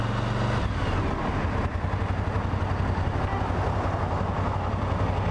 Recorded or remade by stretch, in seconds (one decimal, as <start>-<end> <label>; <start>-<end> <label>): 0.0-5.3 recorded